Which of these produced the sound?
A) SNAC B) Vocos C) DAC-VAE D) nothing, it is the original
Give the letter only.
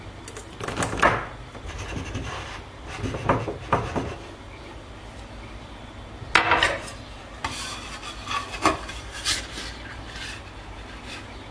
D